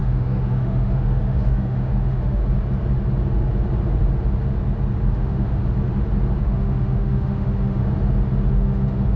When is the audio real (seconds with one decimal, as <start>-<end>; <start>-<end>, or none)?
2.4-5.1; 5.6-6.4; 7.8-8.5